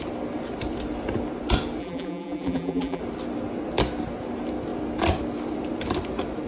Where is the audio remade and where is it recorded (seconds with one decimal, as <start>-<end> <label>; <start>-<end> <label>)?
0.0-1.8 recorded; 1.8-3.0 remade; 3.0-6.5 recorded